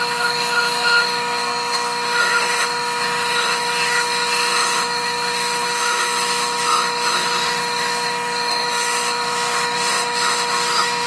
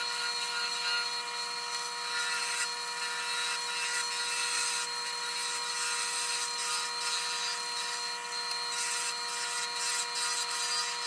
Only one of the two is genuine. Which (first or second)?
second